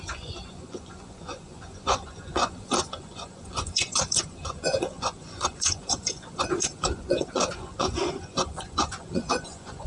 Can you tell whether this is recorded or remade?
remade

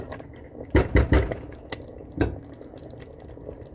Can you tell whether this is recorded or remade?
recorded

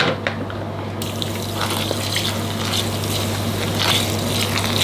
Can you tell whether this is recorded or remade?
recorded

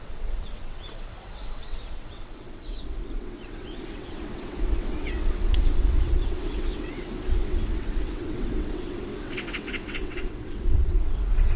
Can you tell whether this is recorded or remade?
remade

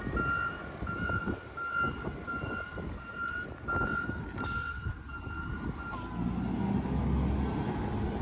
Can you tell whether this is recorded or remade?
recorded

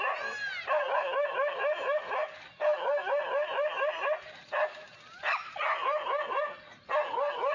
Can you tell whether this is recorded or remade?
recorded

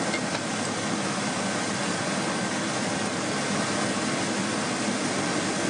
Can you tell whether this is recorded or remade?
recorded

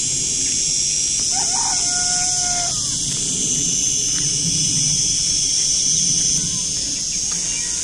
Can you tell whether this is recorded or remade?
recorded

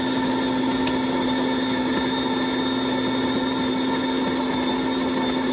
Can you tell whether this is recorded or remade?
recorded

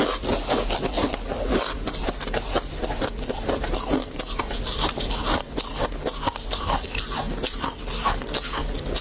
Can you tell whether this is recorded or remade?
recorded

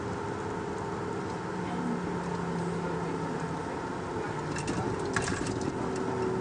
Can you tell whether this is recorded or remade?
recorded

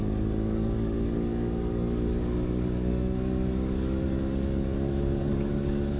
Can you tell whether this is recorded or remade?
remade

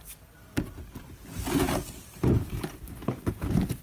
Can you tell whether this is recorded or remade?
recorded